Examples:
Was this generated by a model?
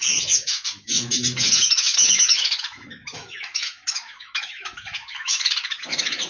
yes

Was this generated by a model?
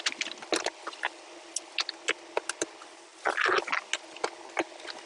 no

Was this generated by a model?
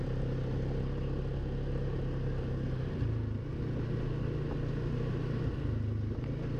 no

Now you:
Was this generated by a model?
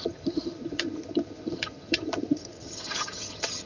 yes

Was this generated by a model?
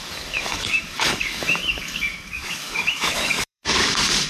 yes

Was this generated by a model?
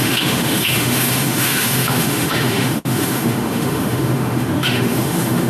yes